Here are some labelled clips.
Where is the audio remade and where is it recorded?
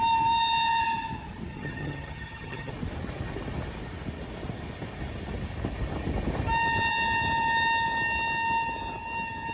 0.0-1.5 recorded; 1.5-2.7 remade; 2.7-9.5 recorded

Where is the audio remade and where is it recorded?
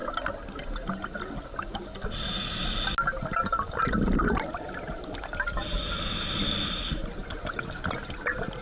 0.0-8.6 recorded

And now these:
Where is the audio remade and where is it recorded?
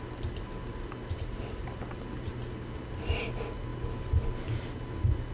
0.0-5.3 recorded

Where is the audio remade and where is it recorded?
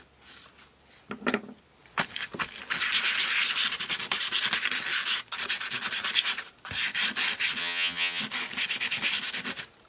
0.0-7.6 recorded; 7.6-8.2 remade; 8.2-9.9 recorded